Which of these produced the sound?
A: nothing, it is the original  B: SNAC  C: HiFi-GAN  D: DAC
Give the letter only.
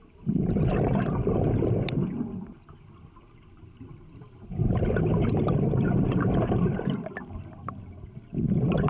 A